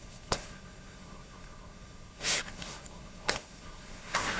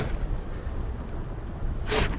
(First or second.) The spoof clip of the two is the first